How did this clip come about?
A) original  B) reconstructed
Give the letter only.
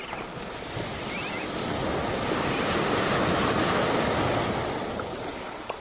A